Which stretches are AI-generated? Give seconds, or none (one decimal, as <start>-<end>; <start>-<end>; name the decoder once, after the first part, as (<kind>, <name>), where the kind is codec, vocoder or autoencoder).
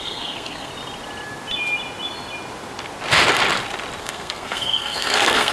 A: 0.0-0.7 (codec, SNAC); 4.0-5.5